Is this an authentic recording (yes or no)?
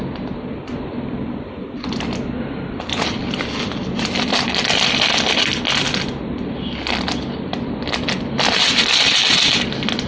yes